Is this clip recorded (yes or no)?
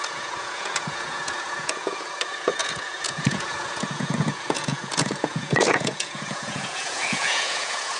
no